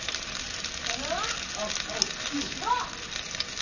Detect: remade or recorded recorded